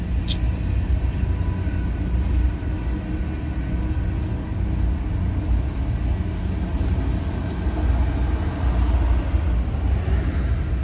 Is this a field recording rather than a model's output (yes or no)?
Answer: yes